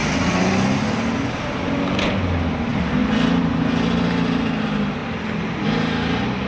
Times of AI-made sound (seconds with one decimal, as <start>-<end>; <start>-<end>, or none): none